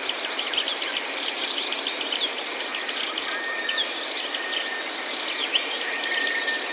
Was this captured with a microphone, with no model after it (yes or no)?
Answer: yes